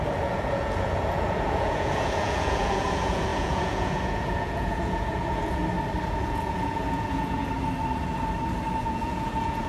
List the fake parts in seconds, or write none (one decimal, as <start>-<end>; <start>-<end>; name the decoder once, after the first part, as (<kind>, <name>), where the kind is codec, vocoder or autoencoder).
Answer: 0.0-5.6 (vocoder, Vocos); 6.2-7.4; 8.8-9.7